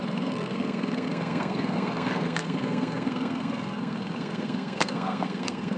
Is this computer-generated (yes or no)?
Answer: yes